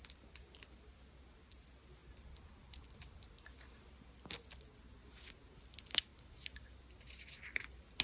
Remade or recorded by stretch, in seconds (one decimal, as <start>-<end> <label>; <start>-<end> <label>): 0.0-8.0 recorded